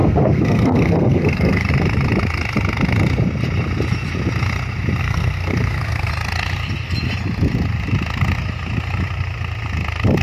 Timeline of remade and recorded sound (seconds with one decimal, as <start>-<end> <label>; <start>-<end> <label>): 0.0-1.7 remade; 1.7-5.0 recorded; 5.0-6.1 remade; 6.1-10.2 recorded